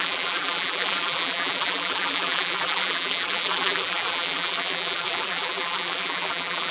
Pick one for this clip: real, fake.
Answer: fake